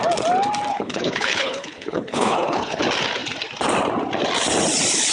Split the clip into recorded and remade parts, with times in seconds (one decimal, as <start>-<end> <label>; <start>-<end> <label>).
0.0-0.7 recorded; 0.7-2.8 remade; 2.8-5.1 recorded